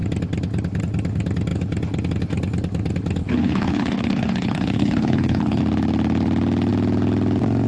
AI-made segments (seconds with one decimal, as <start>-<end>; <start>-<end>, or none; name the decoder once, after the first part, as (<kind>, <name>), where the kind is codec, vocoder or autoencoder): 3.2-5.6 (codec, HILCodec)

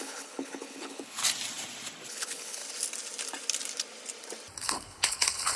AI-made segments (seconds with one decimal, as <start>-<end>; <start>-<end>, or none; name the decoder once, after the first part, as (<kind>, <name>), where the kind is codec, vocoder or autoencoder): 0.0-1.2 (codec, HILCodec); 2.1-2.6; 4.6-5.6

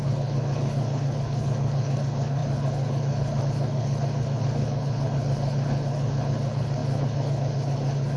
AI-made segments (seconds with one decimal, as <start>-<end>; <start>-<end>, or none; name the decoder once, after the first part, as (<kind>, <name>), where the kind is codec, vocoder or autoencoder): 0.0-8.2 (codec, HILCodec)

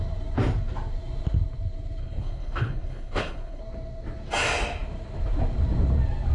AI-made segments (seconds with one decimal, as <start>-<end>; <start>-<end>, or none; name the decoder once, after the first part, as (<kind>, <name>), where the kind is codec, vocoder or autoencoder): 2.0-3.6 (codec, HILCodec)

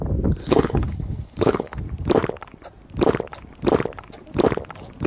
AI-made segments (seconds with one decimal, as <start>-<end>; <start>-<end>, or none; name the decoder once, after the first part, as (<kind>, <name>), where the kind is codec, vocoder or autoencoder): 0.4-1.8 (codec, HILCodec)